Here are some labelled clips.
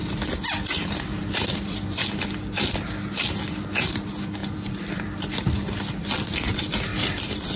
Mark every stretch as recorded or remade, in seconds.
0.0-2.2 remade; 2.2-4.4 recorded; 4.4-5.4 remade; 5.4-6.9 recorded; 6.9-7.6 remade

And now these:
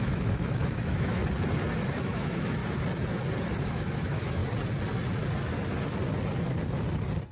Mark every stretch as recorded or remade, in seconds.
0.0-1.2 remade; 1.2-1.9 recorded; 1.9-2.6 remade; 2.6-3.6 recorded; 3.6-4.4 remade; 4.4-7.3 recorded

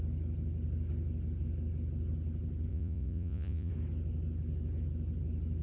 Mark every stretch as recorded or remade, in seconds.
0.0-2.7 recorded; 2.7-3.7 remade; 3.7-5.6 recorded